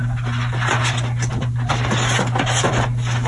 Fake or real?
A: real